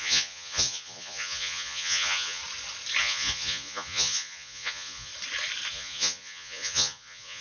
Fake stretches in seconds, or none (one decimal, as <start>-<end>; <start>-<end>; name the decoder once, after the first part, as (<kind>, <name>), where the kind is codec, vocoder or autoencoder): 0.0-2.4 (vocoder, Vocos); 3.0-5.1; 5.7-7.4